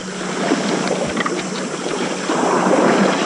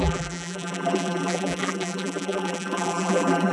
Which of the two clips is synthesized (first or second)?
second